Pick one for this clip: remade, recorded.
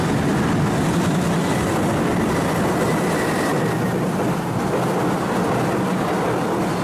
recorded